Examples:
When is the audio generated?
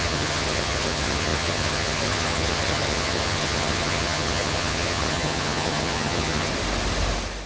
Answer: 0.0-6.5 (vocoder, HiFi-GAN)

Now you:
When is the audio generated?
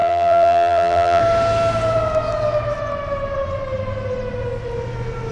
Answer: 0.0-1.2 (vocoder, BigVGAN v2)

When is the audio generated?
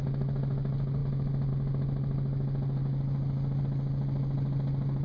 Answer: none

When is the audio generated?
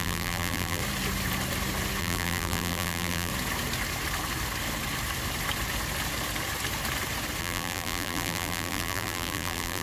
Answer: 0.0-0.8 (vocoder, BigVGAN v2); 2.0-3.3; 7.4-9.8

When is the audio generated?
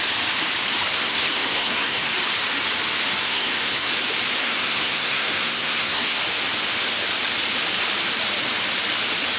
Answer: 0.9-2.1 (codec, SNAC); 3.2-3.9; 4.4-6.2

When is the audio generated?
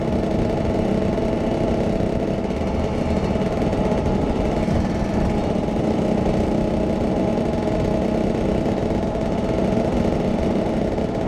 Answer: none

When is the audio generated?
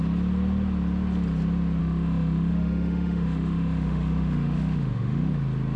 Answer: 1.8-5.3 (autoencoder, DAC-VAE)